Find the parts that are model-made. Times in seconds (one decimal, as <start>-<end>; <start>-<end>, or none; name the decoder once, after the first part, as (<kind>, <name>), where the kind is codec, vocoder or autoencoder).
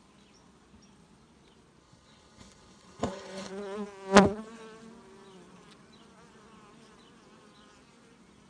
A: 1.8-3.5 (codec, HILCodec)